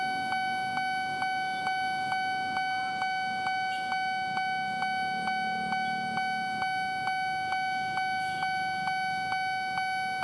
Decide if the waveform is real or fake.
real